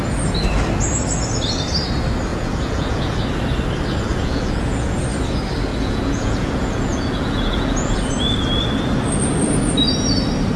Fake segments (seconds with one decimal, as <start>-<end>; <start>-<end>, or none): 2.3-3.2; 4.1-5.0; 5.7-8.1